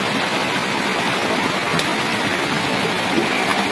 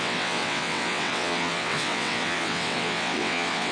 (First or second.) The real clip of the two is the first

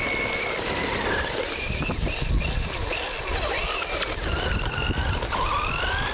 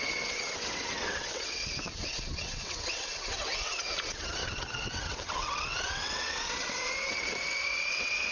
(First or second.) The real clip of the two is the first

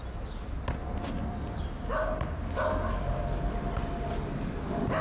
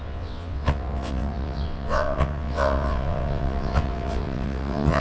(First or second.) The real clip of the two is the first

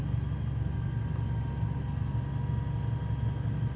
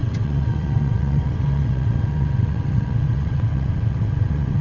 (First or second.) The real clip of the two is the first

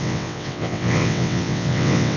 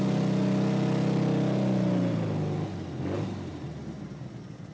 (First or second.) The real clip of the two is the second